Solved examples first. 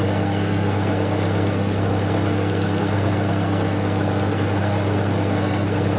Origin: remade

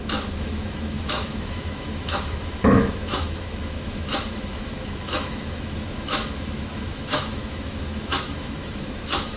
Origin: remade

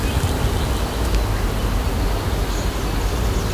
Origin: recorded